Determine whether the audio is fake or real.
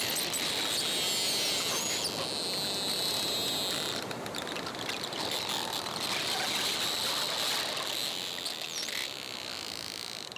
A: real